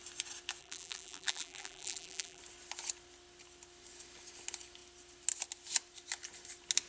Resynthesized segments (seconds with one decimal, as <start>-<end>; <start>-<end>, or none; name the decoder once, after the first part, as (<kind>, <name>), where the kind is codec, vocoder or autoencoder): 0.6-2.4 (vocoder, BigVGAN v2)